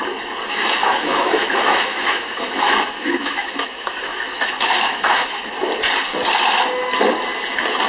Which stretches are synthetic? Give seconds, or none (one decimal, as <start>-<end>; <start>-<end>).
0.8-5.4